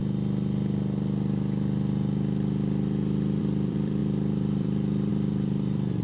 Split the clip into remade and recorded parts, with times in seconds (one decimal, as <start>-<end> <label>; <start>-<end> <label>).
0.0-3.4 recorded; 3.4-6.0 remade